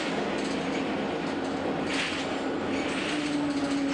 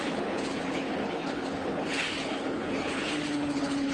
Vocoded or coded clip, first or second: second